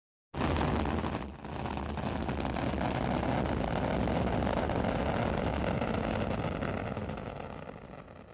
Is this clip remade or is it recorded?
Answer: recorded